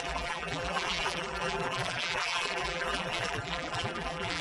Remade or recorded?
remade